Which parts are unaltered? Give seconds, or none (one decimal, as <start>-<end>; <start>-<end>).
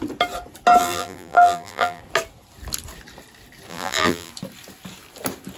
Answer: 0.0-0.8; 2.0-3.7; 4.3-5.6